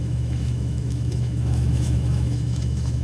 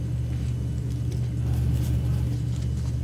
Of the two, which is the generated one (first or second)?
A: first